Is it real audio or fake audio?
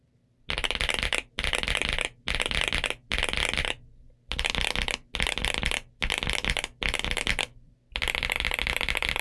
real